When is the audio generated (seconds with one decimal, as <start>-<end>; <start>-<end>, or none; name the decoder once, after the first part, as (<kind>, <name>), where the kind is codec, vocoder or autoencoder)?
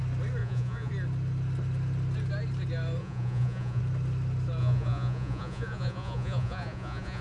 0.4-0.9 (vocoder, Vocos); 3.0-3.8; 4.6-7.2